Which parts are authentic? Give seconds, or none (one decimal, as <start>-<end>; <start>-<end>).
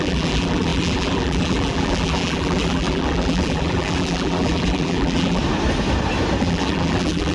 5.4-6.4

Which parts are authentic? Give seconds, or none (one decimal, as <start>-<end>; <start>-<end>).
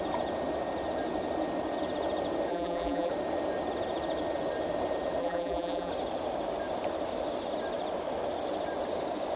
0.0-2.5; 3.1-5.2; 5.9-9.4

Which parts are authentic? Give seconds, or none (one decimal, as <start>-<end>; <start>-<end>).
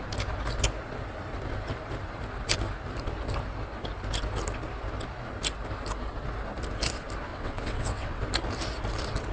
0.0-7.3; 8.2-9.3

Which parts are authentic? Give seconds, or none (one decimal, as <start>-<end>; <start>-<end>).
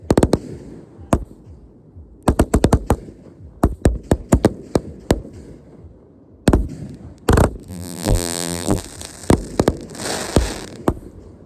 0.0-7.7; 8.8-11.5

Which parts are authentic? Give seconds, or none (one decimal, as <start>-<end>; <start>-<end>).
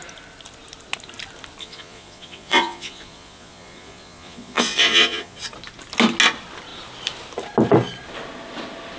0.0-1.6; 5.4-9.0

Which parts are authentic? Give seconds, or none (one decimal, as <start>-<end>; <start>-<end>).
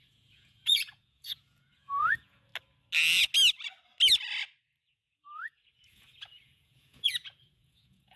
2.5-4.9